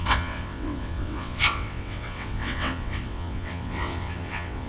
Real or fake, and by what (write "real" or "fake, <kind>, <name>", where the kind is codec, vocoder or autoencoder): fake, vocoder, WaveNeXt